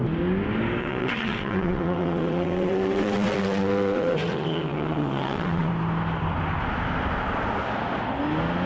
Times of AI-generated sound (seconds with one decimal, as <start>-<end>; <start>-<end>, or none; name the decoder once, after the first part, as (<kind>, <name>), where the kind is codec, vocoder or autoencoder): 0.8-5.7 (vocoder, WaveNeXt)